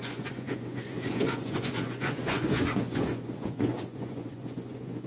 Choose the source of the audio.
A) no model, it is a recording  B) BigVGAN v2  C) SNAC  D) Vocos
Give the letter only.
D